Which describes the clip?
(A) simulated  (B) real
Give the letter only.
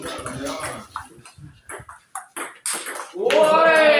B